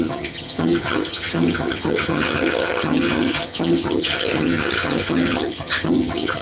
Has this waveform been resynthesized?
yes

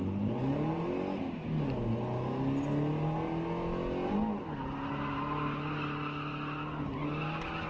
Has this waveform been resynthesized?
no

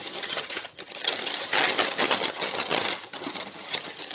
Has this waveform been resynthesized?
yes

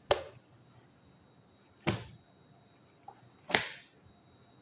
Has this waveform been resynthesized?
no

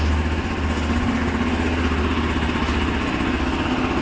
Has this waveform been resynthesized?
no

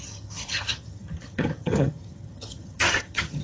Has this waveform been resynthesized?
yes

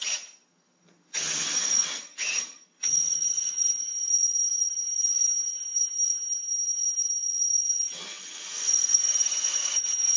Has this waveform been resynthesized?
yes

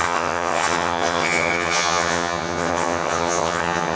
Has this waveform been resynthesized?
yes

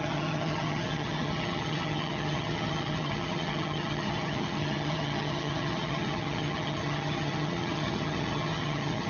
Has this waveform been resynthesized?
yes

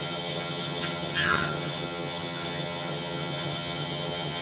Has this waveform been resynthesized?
yes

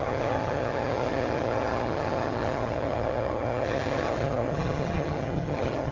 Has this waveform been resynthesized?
yes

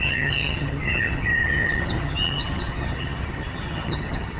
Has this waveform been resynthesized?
yes